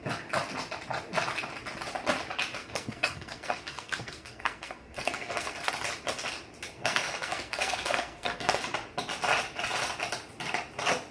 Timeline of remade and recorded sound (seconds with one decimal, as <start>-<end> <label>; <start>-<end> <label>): 0.0-2.6 recorded; 2.6-5.7 remade; 5.7-6.7 recorded; 6.7-8.6 remade; 8.6-11.1 recorded